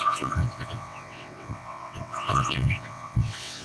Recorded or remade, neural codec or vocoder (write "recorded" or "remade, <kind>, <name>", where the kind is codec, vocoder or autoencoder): remade, vocoder, WaveNeXt